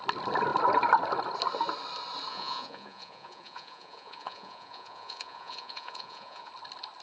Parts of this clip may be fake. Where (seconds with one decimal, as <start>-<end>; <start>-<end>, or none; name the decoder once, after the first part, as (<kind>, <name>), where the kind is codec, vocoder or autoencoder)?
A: 2.3-6.5 (vocoder, Vocos)